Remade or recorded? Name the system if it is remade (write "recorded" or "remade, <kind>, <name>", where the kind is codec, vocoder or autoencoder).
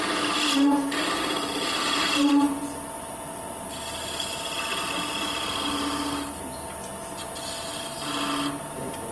recorded